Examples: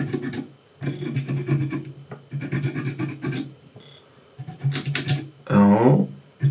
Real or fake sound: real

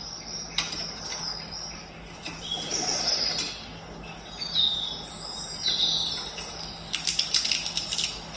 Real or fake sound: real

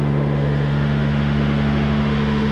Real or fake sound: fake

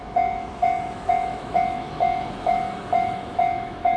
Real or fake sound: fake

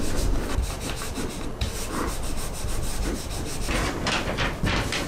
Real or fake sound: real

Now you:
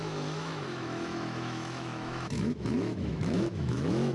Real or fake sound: fake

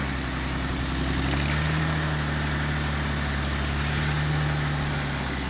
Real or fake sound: real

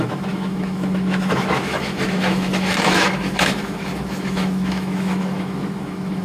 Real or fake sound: fake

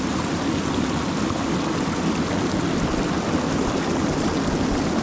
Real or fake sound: real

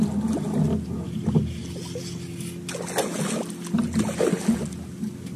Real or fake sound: real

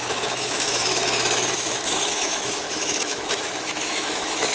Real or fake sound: fake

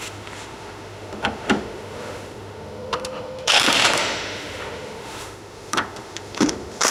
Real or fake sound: fake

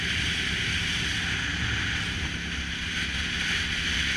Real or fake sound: real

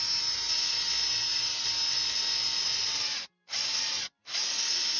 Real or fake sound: real